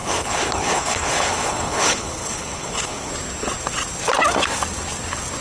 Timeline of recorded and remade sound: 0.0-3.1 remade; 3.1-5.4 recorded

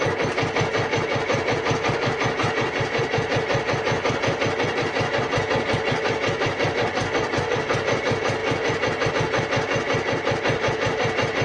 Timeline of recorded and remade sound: 0.0-11.4 recorded

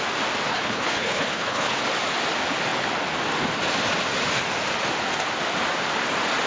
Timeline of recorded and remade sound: 0.0-0.5 recorded; 0.5-1.8 remade; 1.8-6.5 recorded

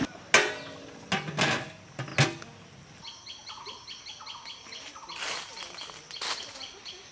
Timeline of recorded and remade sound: 0.0-7.1 recorded

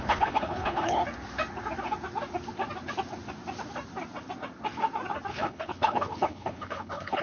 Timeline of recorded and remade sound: 0.0-1.0 remade; 1.0-5.3 recorded; 5.3-7.2 remade